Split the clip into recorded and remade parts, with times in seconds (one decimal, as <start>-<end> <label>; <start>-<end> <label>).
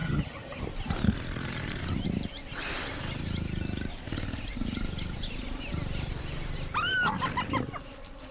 0.0-0.6 remade; 0.6-8.3 recorded